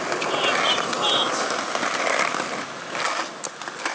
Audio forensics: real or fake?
real